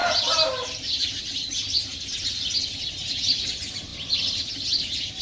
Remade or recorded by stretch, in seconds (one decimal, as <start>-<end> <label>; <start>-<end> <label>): 0.0-1.9 remade; 1.9-3.2 recorded; 3.2-5.2 remade